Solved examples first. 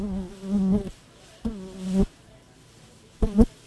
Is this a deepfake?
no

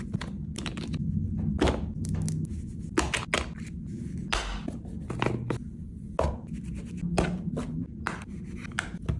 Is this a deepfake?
no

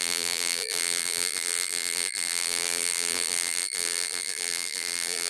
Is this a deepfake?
yes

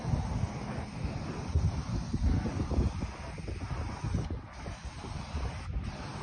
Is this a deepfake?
no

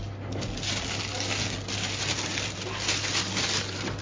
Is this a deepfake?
no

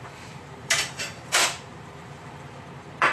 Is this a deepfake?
yes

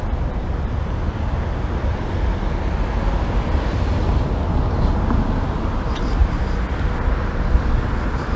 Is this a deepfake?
no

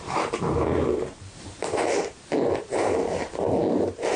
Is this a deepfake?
yes